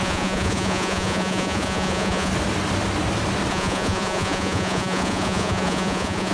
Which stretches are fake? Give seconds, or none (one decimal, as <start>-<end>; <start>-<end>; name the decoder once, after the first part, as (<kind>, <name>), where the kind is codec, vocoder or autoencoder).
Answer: 0.0-2.3 (vocoder, Vocos); 3.5-6.3